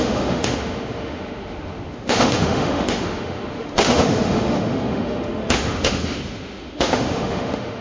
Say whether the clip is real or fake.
fake